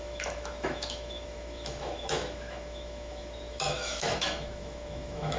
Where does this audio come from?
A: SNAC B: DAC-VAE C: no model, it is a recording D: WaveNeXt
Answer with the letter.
B